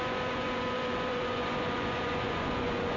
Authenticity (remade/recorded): remade